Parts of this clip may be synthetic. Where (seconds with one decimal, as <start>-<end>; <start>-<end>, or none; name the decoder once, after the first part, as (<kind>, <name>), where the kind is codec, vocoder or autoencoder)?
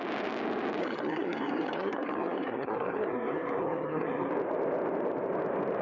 0.8-4.3 (codec, SNAC)